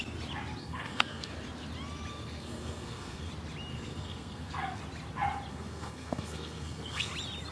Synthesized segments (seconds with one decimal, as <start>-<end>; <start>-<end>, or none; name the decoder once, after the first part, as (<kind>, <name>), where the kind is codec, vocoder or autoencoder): 0.6-1.3 (codec, SNAC); 2.1-3.3; 3.7-4.8; 5.5-7.1